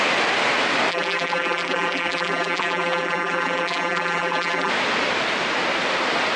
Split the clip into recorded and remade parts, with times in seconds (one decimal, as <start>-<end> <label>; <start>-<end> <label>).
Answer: 0.0-0.9 recorded; 0.9-4.7 remade; 4.7-6.4 recorded